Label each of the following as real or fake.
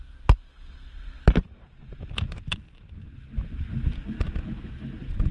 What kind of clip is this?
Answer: real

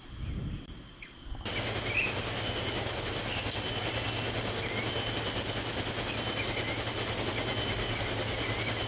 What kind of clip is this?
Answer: real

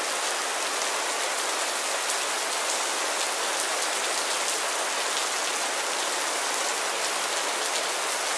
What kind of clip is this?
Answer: real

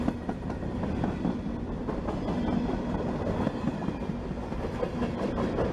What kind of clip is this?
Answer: real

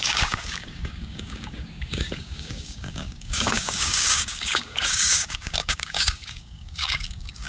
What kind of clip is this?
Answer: fake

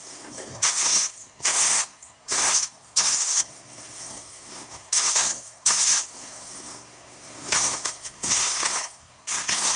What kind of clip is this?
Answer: fake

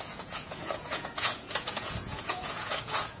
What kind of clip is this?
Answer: fake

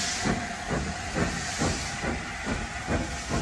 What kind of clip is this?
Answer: real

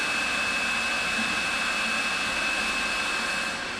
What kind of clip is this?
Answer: real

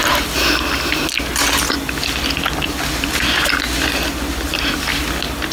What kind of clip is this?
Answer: real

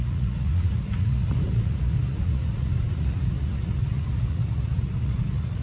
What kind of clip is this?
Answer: fake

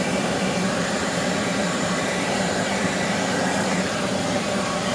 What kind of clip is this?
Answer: fake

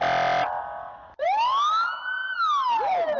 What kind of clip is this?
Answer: real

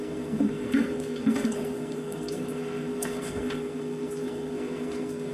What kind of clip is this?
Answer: fake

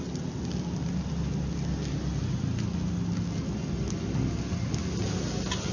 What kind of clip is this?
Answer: real